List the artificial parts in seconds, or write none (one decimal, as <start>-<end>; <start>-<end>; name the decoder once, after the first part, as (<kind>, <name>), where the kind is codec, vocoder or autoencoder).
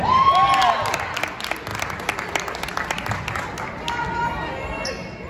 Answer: none